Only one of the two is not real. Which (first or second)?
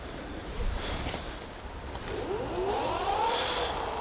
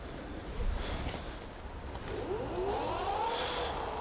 first